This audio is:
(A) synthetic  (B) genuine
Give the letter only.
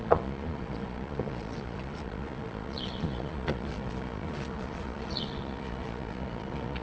A